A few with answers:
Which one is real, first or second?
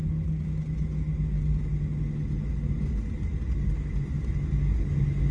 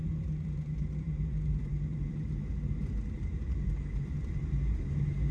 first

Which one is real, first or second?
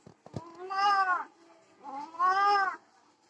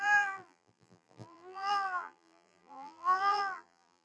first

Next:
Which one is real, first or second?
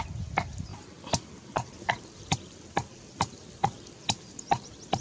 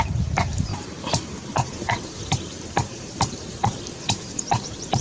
first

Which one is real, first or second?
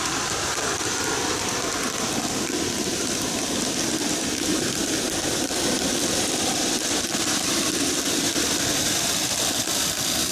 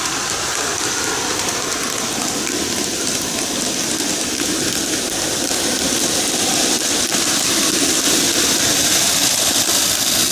second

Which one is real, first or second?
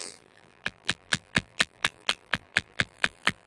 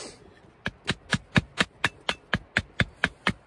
second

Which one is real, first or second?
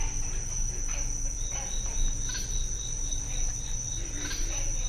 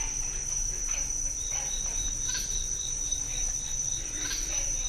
first